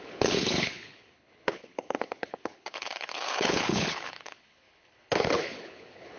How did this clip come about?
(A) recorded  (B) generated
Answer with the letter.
B